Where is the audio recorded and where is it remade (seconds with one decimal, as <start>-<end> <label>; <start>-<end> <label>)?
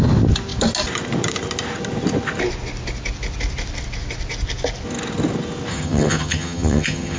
0.0-5.7 recorded; 5.7-7.2 remade